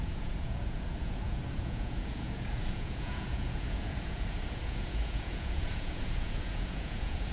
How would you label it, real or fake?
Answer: fake